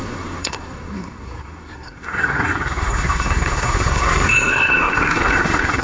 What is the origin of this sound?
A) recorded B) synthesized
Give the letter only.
B